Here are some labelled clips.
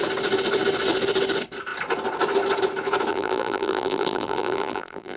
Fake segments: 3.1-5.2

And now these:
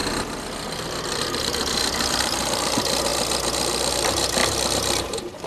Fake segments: 1.2-5.5

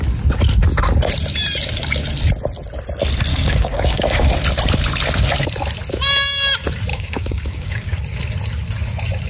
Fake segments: 3.3-4.3; 6.9-8.0